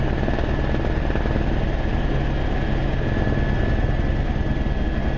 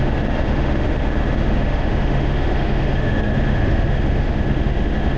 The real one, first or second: first